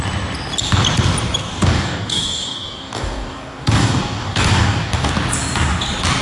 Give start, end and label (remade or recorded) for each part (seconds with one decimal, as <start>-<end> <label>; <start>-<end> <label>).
0.0-1.4 recorded; 1.4-5.1 remade; 5.1-6.2 recorded